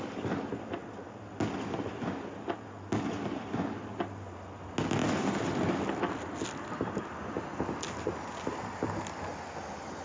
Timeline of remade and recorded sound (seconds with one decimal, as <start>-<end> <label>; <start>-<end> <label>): 0.0-10.0 recorded